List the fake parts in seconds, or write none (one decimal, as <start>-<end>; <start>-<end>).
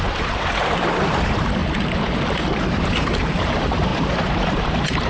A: 0.0-1.6; 2.7-5.1